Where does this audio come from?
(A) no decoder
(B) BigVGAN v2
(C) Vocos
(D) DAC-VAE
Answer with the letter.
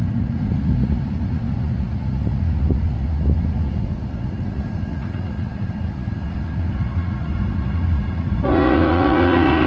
C